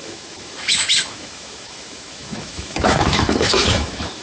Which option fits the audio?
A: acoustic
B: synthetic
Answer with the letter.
B